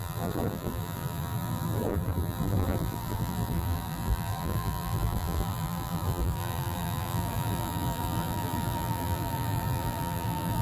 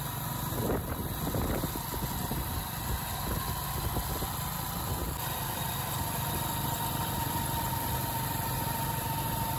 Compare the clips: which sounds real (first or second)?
second